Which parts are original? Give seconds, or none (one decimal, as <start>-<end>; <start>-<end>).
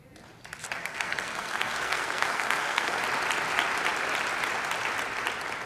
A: 0.0-0.8; 3.0-5.7